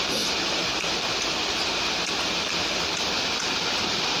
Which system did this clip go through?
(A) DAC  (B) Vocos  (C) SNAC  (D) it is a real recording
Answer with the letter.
D